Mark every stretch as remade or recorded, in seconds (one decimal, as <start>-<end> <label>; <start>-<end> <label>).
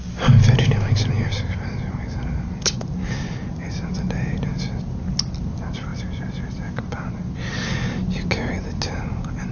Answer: 0.0-9.5 recorded